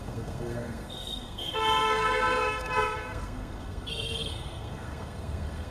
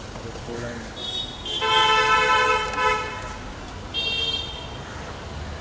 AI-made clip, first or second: first